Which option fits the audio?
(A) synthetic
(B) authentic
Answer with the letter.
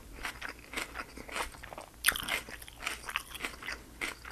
B